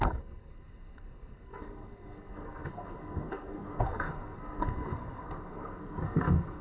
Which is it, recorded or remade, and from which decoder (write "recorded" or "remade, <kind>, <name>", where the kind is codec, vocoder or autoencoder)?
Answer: remade, codec, SNAC